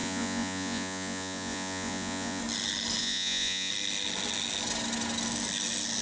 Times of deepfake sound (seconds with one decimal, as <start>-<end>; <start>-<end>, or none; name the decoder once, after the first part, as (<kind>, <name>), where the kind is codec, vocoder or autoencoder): 0.0-2.4 (vocoder, Vocos); 3.0-3.7